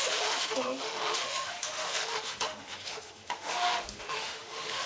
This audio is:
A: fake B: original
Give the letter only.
A